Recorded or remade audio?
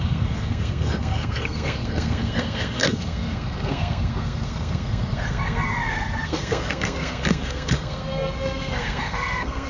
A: remade